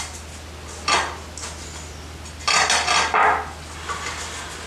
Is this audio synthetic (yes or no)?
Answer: no